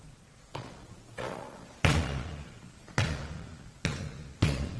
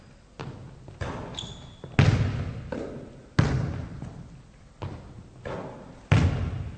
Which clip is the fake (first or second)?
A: first